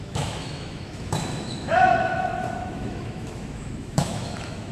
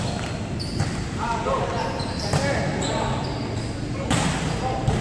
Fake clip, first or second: first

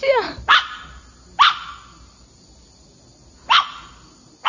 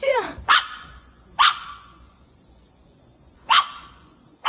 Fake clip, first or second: second